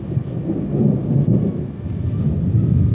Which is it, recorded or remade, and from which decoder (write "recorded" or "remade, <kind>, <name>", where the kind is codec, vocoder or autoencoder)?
recorded